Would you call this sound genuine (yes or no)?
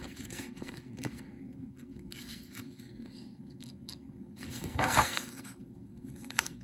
no